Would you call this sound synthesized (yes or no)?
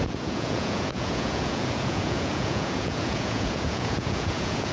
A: yes